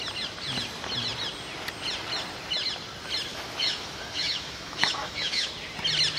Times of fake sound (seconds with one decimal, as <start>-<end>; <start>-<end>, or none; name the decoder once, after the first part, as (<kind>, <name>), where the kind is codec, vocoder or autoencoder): 3.3-5.5 (autoencoder, DAC-VAE)